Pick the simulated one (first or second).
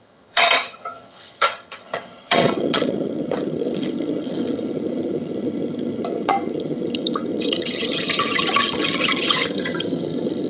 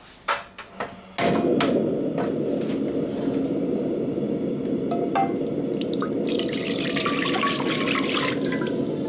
first